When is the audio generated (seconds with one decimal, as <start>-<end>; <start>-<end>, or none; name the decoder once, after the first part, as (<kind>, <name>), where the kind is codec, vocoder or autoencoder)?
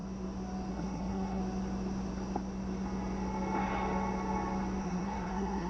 0.7-1.4 (codec, SNAC); 4.8-5.7